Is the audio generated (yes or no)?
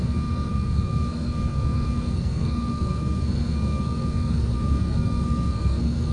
yes